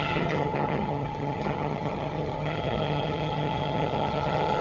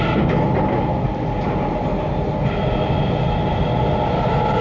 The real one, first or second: second